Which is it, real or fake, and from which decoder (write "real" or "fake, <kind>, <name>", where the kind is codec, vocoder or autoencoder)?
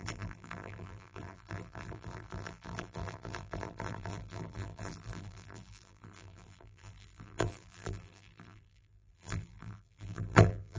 fake, vocoder, BigVGAN v2